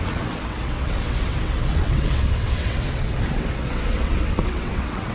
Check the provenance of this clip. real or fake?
fake